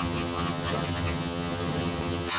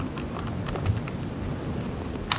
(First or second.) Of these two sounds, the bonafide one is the second